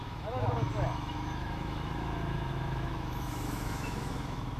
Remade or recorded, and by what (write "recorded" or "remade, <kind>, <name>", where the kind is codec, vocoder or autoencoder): remade, autoencoder, DAC-VAE